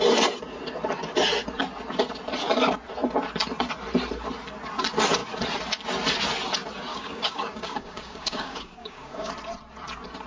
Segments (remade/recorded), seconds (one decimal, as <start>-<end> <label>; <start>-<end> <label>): 0.0-6.9 recorded; 6.9-9.3 remade; 9.3-10.3 recorded